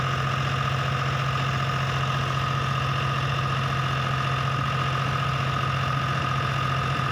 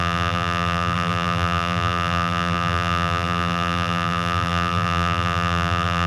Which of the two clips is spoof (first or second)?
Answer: second